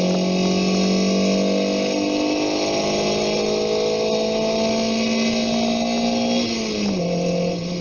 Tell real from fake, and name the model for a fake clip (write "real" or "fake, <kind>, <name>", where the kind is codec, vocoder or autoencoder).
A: real